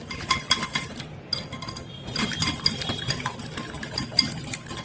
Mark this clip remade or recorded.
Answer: recorded